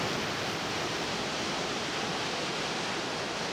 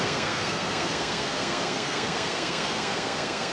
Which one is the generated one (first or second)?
second